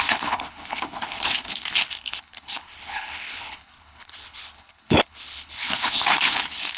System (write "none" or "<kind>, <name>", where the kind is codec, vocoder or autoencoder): codec, HILCodec